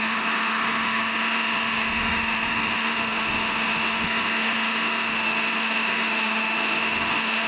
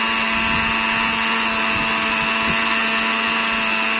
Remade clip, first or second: first